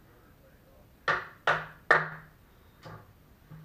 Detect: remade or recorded recorded